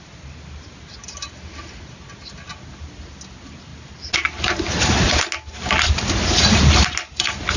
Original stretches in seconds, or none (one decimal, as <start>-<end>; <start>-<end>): 0.0-7.6